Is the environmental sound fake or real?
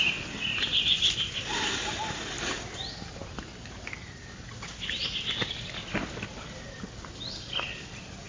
real